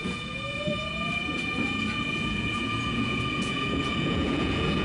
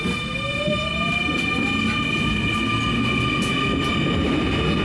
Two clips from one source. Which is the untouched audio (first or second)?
second